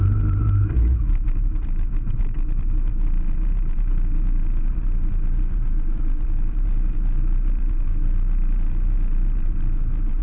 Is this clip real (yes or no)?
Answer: no